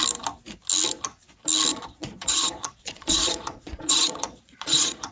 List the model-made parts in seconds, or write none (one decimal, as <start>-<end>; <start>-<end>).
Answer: 1.7-5.1